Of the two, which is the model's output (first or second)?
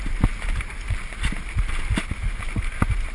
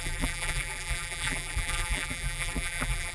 second